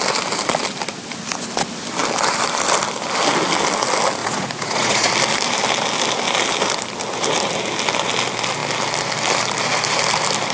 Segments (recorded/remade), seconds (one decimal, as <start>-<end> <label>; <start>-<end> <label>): 0.0-4.2 recorded; 4.2-5.1 remade; 5.1-10.5 recorded